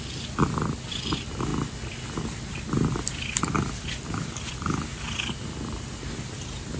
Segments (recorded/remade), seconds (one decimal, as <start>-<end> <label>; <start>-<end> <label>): 0.0-6.8 recorded

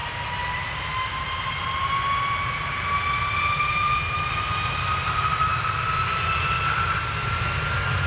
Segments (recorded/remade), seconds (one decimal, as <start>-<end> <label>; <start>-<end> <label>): 0.0-8.1 recorded

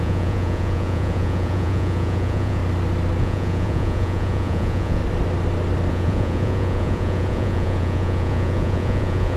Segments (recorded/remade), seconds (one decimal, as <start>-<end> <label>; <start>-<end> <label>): 0.0-2.6 remade; 2.6-3.2 recorded; 3.2-5.0 remade; 5.0-5.9 recorded; 5.9-9.4 remade

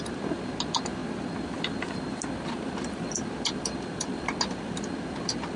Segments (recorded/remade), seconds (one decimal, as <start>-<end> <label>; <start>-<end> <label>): 0.0-5.6 recorded